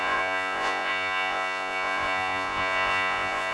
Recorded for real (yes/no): no